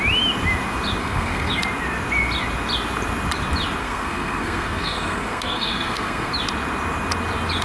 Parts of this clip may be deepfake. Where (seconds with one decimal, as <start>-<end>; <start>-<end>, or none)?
1.0-1.6; 3.8-6.3